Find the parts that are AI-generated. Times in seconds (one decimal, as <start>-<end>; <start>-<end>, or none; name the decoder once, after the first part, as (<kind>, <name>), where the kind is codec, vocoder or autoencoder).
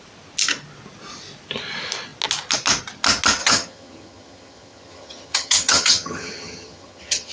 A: 3.4-7.3 (vocoder, HiFi-GAN)